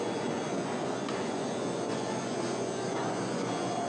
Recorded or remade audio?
remade